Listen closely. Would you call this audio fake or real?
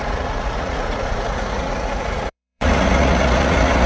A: fake